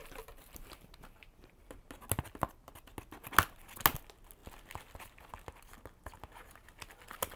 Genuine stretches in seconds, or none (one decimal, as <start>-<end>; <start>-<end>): 1.6-7.4